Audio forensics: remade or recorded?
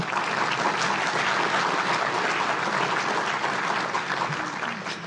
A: recorded